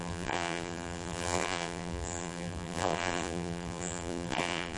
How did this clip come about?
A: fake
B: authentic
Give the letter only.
A